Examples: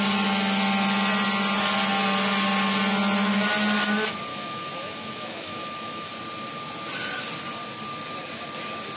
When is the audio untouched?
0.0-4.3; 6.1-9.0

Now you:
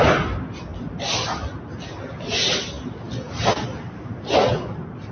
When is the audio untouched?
0.0-5.1